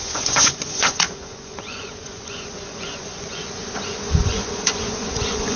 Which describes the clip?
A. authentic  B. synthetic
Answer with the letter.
B